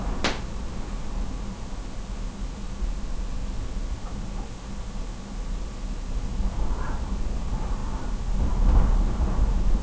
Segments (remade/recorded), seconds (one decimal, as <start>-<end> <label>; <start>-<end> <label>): 0.0-9.8 recorded